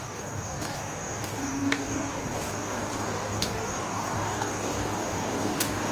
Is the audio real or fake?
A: fake